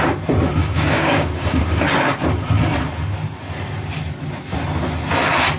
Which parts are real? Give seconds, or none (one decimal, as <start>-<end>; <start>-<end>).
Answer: 0.0-0.6; 1.6-5.6